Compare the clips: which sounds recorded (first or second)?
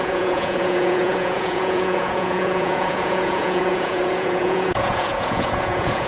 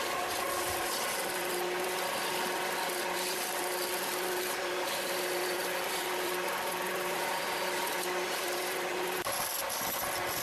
second